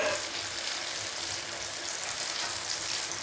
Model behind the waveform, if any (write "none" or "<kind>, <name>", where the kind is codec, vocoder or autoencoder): none